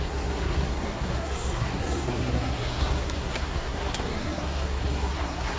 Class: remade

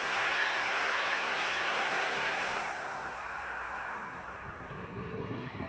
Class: remade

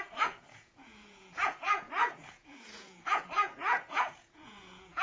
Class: remade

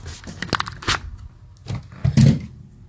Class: recorded